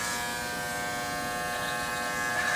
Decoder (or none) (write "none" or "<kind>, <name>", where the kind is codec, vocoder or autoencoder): none